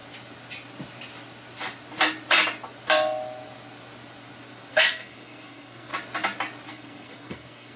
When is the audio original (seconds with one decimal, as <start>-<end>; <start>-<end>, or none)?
0.0-4.7; 5.9-6.7